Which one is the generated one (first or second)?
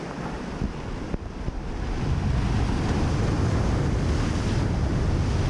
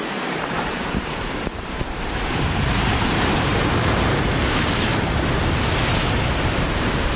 second